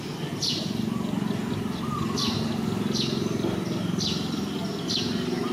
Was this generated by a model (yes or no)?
no